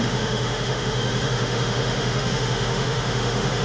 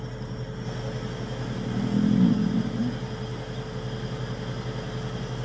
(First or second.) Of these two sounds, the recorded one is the second